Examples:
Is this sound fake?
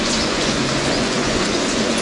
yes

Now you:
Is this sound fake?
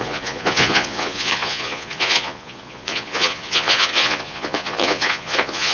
yes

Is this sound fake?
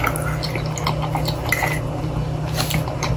no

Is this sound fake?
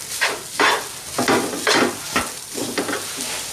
no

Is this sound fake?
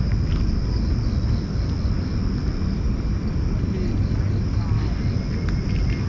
no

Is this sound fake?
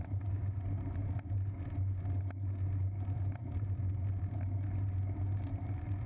no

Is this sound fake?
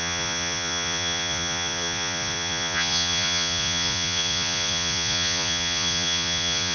yes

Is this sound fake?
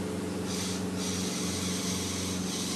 no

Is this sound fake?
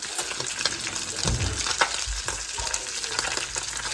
no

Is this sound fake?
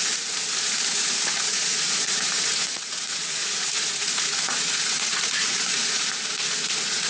yes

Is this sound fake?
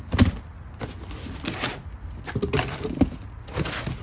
no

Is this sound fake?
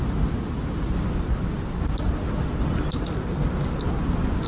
no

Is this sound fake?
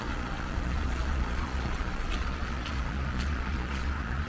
yes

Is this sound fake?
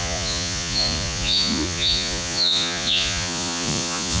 yes